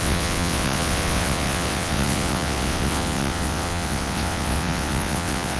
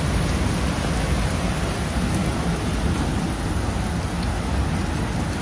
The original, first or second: second